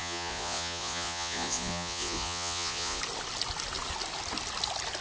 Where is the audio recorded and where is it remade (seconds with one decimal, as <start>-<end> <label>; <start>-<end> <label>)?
0.0-3.0 remade; 3.0-5.0 recorded